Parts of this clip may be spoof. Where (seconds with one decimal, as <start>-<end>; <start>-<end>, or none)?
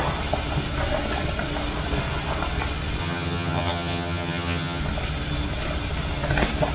3.0-4.8